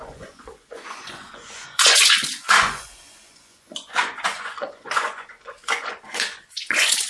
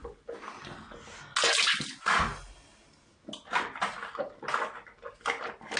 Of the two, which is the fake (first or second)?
first